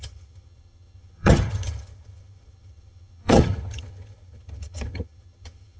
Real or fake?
fake